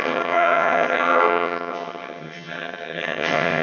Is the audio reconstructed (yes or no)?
yes